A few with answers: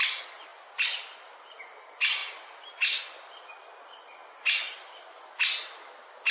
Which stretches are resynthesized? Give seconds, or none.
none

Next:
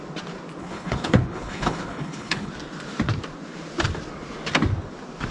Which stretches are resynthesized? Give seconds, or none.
0.6-2.5